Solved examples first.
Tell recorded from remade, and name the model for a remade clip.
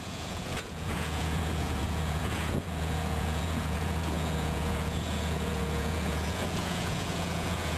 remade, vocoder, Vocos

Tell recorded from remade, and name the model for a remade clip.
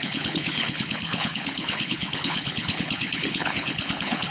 remade, codec, HILCodec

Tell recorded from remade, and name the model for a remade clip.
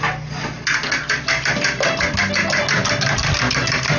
recorded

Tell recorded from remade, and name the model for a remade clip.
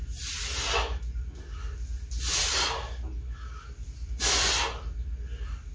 recorded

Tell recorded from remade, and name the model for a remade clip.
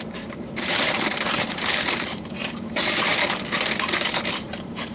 remade, vocoder, BigVGAN v2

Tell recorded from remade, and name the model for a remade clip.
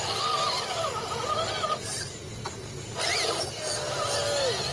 recorded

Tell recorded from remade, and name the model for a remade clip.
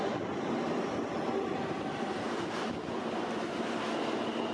recorded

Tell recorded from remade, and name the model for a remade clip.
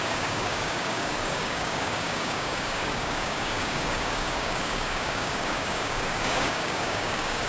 remade, codec, DAC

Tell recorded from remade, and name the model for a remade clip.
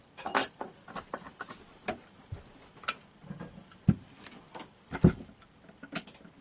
recorded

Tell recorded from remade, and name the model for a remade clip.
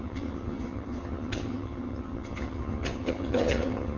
remade, vocoder, HiFi-GAN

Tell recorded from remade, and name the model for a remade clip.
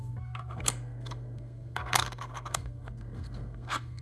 remade, codec, SNAC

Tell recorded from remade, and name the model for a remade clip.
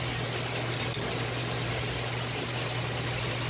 recorded